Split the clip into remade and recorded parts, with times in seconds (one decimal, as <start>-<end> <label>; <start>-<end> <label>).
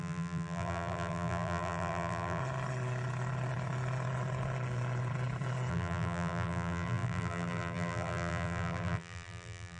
0.0-2.4 remade; 2.4-5.7 recorded; 5.7-9.8 remade